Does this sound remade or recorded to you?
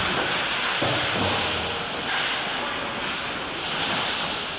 recorded